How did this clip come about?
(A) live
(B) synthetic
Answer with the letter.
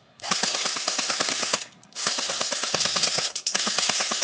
B